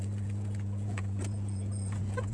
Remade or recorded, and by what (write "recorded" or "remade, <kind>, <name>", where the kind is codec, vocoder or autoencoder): remade, vocoder, Vocos